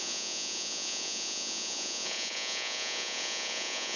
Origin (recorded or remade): remade